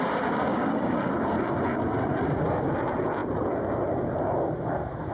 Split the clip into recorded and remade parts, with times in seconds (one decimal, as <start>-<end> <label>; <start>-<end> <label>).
0.0-0.5 recorded; 0.5-1.1 remade; 1.1-5.1 recorded